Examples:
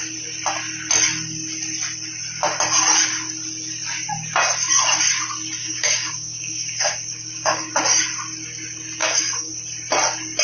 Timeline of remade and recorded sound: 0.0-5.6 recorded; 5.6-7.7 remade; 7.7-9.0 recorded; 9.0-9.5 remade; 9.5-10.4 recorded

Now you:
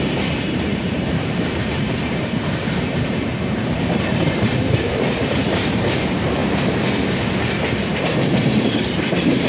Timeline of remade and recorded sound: 0.0-6.4 remade; 6.4-8.6 recorded; 8.6-9.5 remade

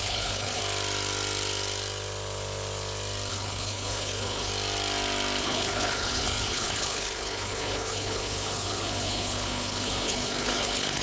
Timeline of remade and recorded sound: 0.0-0.6 remade; 0.6-3.3 recorded; 3.3-4.5 remade; 4.5-5.4 recorded; 5.4-11.0 remade

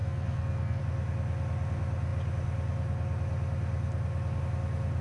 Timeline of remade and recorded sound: 0.0-0.8 remade; 0.8-5.0 recorded

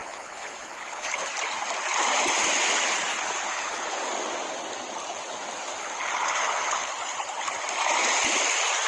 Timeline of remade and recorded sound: 0.0-1.3 remade; 1.3-3.1 recorded; 3.1-4.0 remade; 4.0-5.8 recorded; 5.8-6.9 remade; 6.9-8.9 recorded

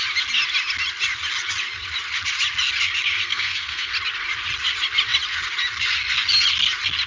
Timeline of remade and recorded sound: 0.0-3.2 recorded; 3.2-3.9 remade; 3.9-7.1 recorded

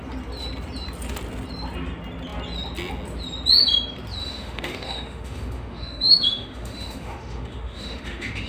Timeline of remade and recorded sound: 0.0-4.2 recorded; 4.2-8.5 remade